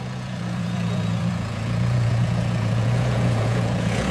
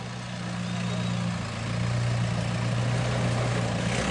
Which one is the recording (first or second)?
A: second